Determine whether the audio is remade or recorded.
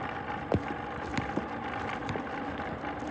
recorded